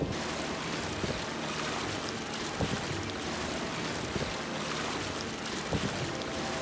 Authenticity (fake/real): real